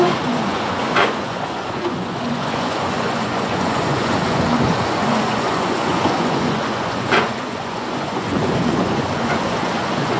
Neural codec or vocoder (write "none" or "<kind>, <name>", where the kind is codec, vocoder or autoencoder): vocoder, Vocos